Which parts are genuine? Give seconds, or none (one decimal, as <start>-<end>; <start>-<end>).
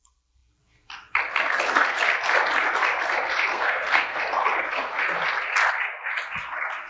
0.0-3.5; 4.2-6.9